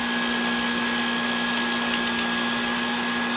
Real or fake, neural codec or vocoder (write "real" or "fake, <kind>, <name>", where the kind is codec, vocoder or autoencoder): real